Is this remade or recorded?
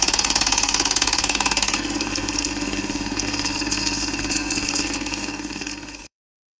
remade